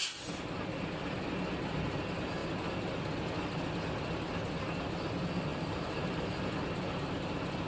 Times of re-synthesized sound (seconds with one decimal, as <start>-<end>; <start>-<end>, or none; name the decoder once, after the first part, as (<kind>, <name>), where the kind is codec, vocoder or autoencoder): 5.5-6.5 (vocoder, BigVGAN v2)